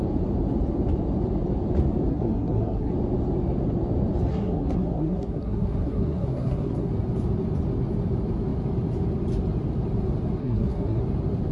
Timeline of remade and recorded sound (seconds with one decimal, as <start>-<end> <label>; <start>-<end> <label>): 0.0-2.1 recorded; 2.1-2.9 remade; 2.9-4.3 recorded; 4.3-6.9 remade; 6.9-10.4 recorded; 10.4-11.0 remade; 11.0-11.5 recorded